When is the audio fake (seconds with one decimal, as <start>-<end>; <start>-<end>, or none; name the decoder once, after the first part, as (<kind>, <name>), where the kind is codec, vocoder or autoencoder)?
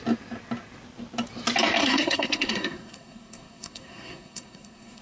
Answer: 1.8-5.0 (codec, SNAC)